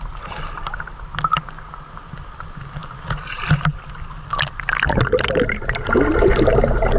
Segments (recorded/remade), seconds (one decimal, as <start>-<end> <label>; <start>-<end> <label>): 0.0-7.0 recorded